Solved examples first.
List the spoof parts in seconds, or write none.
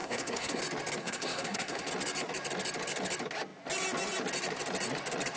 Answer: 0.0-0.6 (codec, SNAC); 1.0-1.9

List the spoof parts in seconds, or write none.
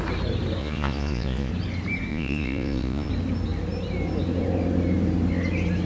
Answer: 0.6-1.5 (vocoder, Vocos); 2.1-3.1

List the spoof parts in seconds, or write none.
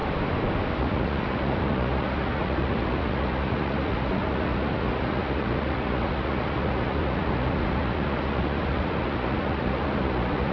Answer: 0.8-10.5 (vocoder, Vocos)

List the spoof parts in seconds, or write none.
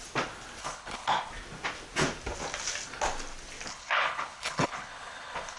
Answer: 0.6-1.3 (codec, HILCodec); 3.7-5.6